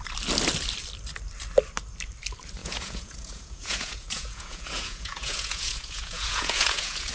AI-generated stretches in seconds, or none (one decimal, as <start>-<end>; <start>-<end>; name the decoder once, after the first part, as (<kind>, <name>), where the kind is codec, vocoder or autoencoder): 2.6-7.1 (vocoder, Vocos)